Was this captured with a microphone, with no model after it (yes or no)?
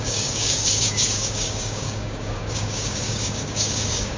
no